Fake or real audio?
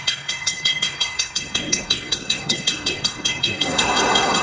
fake